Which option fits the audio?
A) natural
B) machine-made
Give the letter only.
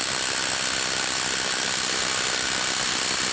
A